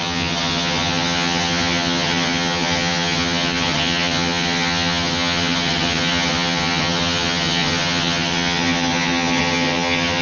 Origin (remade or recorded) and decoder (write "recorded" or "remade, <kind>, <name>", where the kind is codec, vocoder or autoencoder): remade, vocoder, HiFi-GAN